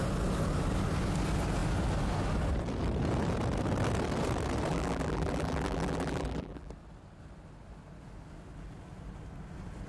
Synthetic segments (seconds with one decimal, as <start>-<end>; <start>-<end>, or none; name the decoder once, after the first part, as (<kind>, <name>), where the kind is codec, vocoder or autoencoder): 4.7-6.7 (vocoder, BigVGAN v2)